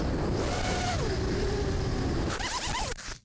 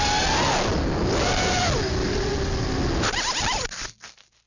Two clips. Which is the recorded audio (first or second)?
second